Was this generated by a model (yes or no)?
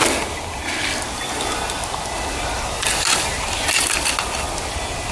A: no